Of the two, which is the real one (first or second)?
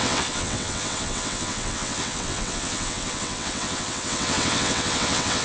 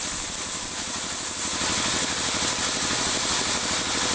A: second